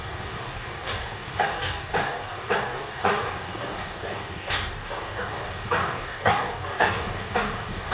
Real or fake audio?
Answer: fake